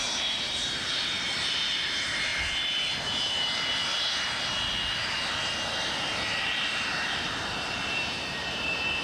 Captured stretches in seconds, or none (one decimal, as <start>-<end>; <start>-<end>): 2.3-3.1; 3.8-6.4